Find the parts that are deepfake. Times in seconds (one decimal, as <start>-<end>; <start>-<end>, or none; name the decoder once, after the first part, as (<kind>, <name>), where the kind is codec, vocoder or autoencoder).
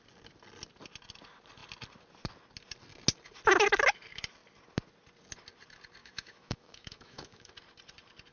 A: 6.0-7.5 (autoencoder, DAC-VAE)